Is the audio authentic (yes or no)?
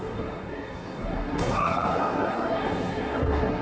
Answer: no